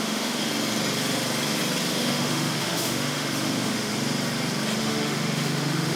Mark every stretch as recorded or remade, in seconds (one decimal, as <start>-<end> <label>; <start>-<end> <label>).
0.0-0.5 remade; 0.5-1.9 recorded; 1.9-3.9 remade; 3.9-4.8 recorded; 4.8-6.0 remade